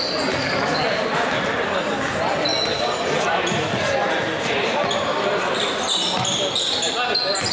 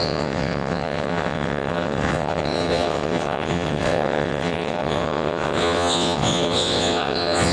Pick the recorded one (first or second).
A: first